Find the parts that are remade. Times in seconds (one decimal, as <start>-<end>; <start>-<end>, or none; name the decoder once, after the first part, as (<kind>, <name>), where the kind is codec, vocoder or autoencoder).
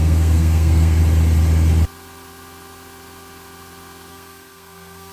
0.0-1.0 (codec, SNAC); 4.1-5.1